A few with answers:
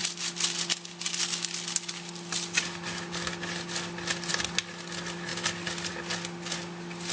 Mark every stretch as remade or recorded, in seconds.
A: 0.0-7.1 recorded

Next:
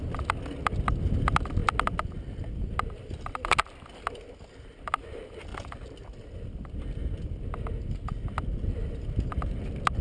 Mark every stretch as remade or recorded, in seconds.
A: 0.0-10.0 recorded

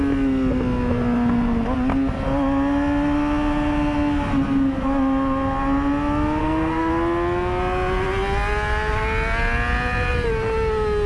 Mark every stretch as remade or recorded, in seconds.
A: 0.0-6.4 recorded; 6.4-6.9 remade; 6.9-11.1 recorded

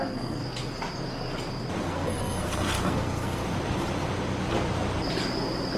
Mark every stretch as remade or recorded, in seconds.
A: 0.0-0.4 remade; 0.4-1.8 recorded; 1.8-3.4 remade; 3.4-5.8 recorded

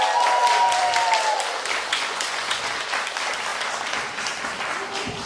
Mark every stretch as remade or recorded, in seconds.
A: 0.0-1.9 recorded; 1.9-2.7 remade; 2.7-5.3 recorded